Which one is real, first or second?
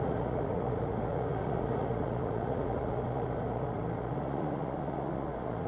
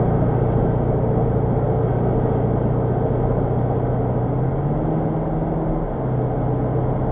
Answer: second